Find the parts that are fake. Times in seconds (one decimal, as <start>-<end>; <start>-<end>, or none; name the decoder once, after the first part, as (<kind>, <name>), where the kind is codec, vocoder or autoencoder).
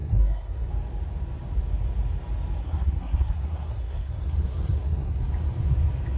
0.0-0.7 (codec, SNAC); 2.6-5.3